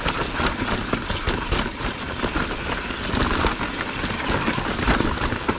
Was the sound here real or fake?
real